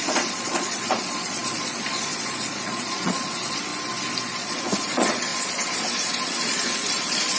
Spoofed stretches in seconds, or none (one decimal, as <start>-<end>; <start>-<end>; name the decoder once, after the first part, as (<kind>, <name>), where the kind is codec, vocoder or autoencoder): 0.0-3.7 (vocoder, Vocos); 4.2-7.4